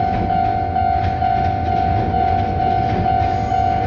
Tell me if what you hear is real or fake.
real